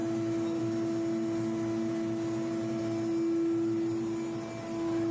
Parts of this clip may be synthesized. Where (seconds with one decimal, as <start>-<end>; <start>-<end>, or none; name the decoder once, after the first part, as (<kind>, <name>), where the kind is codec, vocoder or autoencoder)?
none